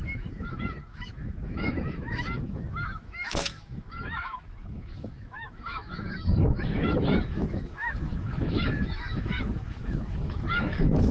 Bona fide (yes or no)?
no